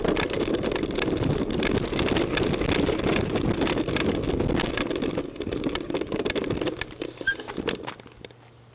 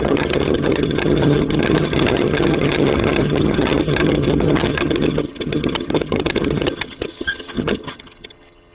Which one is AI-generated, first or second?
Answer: second